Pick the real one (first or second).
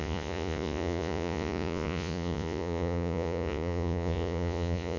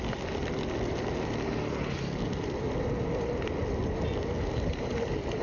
second